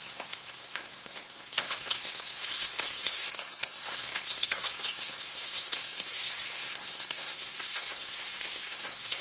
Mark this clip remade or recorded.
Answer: remade